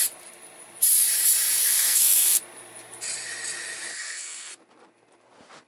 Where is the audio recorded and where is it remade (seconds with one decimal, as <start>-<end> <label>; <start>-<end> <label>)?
0.0-1.6 recorded; 1.6-2.4 remade; 2.4-3.9 recorded; 3.9-4.5 remade; 4.5-5.7 recorded